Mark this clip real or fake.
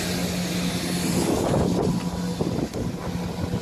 real